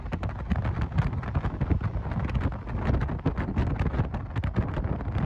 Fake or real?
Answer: real